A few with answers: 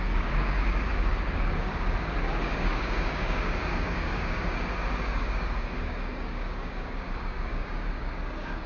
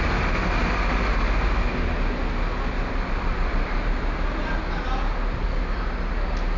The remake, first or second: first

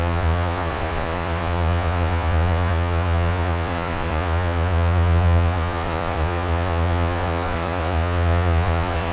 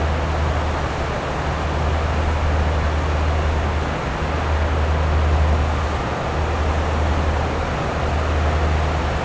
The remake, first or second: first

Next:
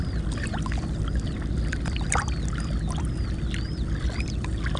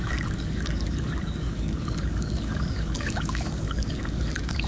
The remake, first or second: second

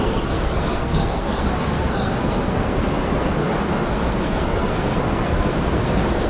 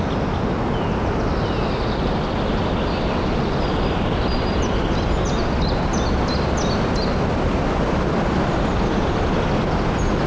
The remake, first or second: first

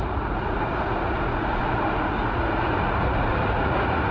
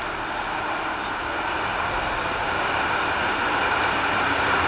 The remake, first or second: first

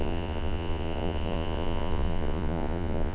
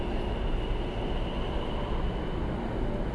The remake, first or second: first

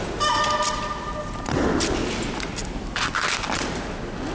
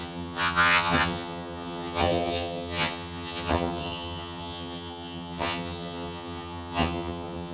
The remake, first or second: second